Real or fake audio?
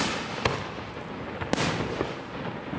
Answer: real